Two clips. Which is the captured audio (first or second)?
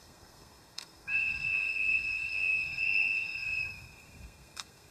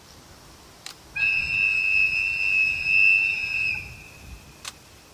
second